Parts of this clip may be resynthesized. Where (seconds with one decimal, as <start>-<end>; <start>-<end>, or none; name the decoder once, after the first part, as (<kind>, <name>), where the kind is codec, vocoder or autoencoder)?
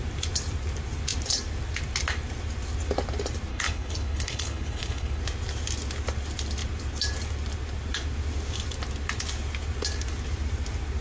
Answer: 3.5-5.2 (codec, HILCodec)